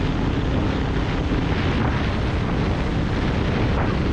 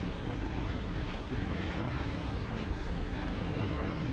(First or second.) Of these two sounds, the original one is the first